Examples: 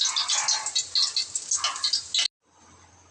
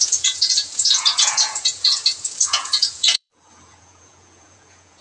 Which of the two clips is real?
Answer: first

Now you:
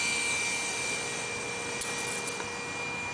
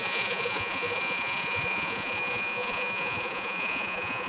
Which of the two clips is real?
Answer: first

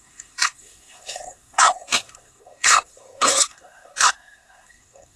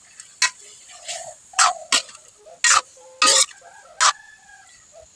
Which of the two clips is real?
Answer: second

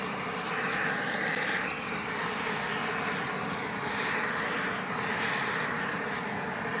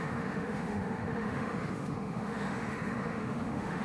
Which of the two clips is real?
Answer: first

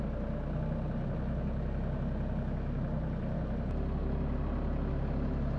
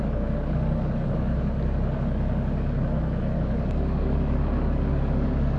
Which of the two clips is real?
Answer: first